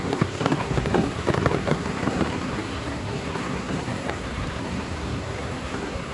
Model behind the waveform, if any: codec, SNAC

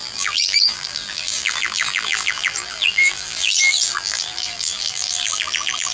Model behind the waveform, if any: vocoder, BigVGAN v2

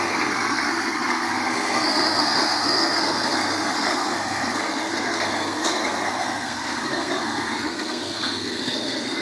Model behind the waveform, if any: codec, SNAC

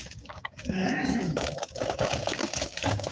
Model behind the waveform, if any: codec, DAC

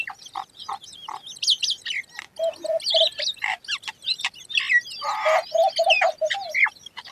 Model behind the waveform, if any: none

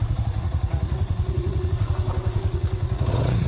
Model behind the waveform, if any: vocoder, Vocos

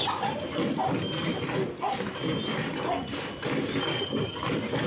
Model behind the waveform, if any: none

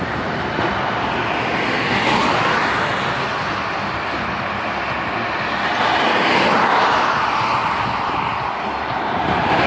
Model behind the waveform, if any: none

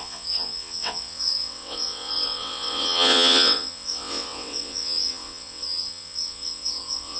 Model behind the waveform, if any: vocoder, WaveNeXt